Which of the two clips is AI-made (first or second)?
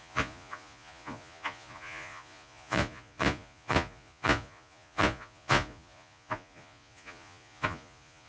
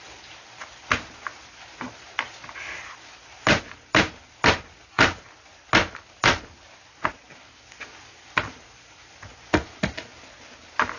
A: first